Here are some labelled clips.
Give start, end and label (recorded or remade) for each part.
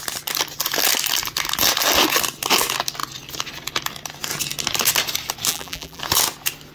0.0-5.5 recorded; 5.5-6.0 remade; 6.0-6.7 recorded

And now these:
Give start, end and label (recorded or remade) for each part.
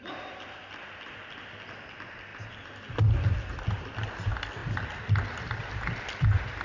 0.0-6.6 recorded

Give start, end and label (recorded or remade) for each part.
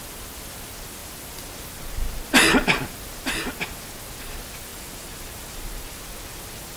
0.0-4.7 recorded; 4.7-6.0 remade; 6.0-6.8 recorded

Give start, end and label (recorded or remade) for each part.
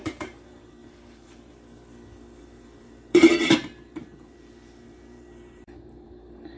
0.0-1.5 remade; 1.5-2.4 recorded; 2.4-6.6 remade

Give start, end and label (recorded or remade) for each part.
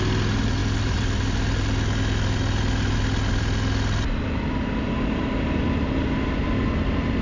0.0-7.2 recorded